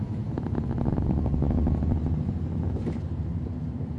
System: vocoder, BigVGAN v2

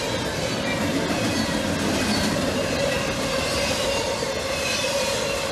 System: none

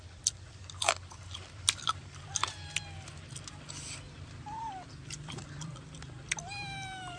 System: vocoder, BigVGAN v2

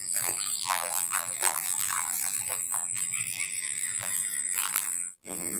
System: vocoder, BigVGAN v2